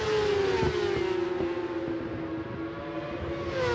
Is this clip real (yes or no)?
yes